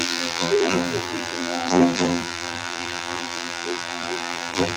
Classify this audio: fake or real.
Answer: fake